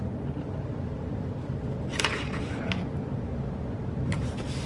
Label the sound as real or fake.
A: real